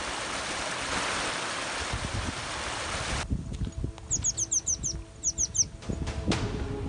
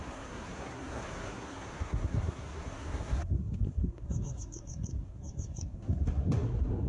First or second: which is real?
first